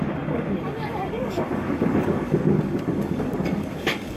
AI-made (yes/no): yes